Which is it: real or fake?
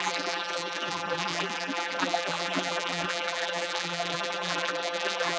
fake